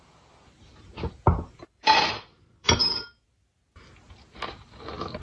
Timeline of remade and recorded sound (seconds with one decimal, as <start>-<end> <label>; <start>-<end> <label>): 0.0-2.8 remade; 2.8-4.0 recorded; 4.0-5.2 remade